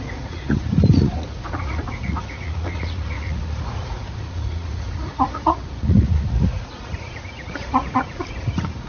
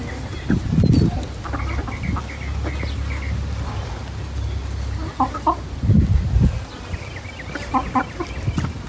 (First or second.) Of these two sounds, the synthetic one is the first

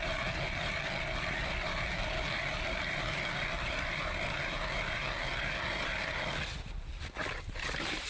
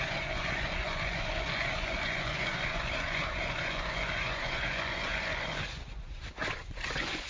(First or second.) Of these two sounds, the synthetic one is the second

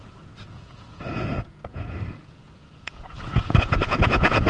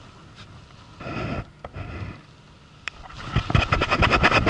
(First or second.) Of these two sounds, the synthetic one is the first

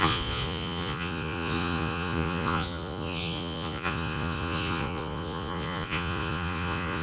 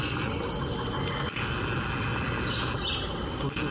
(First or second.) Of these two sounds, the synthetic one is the first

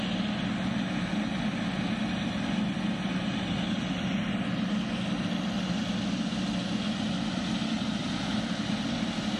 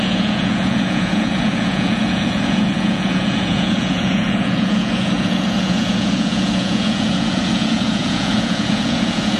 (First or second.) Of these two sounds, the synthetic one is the second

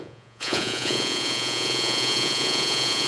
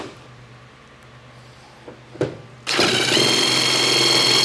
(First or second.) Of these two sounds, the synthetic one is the first